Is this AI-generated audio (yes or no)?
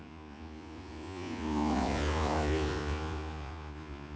yes